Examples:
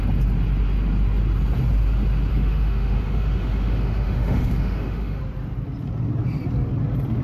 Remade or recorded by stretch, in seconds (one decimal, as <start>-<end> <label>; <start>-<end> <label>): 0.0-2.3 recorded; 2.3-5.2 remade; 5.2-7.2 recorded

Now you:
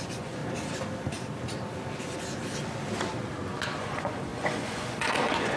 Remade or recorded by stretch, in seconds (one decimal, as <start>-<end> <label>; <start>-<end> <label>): 0.0-0.4 remade; 0.4-3.8 recorded; 3.8-5.6 remade

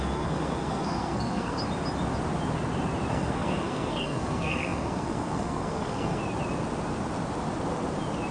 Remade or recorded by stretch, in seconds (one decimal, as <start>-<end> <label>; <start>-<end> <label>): 0.0-1.6 remade; 1.6-3.1 recorded; 3.1-6.2 remade; 6.2-8.3 recorded